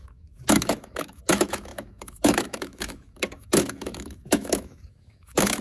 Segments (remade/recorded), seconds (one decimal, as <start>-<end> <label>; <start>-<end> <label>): 0.0-5.6 remade